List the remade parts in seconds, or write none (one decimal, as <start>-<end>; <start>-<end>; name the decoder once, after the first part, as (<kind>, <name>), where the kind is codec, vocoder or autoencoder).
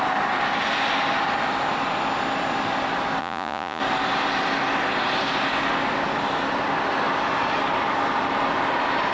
3.2-3.8 (vocoder, Vocos)